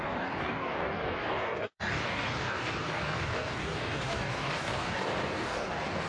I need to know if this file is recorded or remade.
remade